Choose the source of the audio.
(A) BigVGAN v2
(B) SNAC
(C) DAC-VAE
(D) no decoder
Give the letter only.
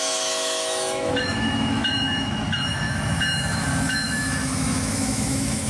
C